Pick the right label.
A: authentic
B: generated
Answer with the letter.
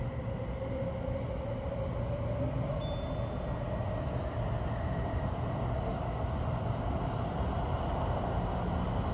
A